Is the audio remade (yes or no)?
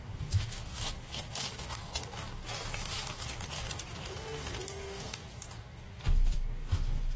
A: yes